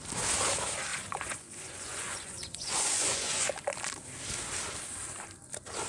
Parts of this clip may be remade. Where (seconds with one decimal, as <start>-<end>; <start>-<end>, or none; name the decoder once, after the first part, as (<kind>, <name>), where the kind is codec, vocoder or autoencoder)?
0.9-3.5 (vocoder, Vocos)